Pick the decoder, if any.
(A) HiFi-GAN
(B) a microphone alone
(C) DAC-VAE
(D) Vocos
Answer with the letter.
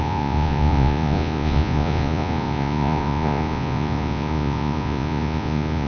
D